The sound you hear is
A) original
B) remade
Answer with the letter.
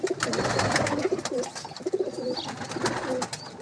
A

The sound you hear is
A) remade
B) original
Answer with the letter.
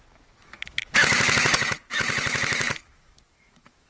A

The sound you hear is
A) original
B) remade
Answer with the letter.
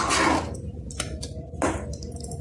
A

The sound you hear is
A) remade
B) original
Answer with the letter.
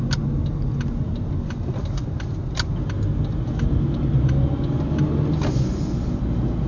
B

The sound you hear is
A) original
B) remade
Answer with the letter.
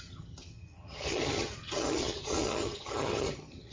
B